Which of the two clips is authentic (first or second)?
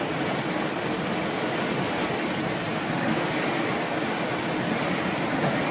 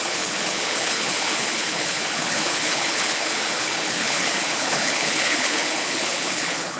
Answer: first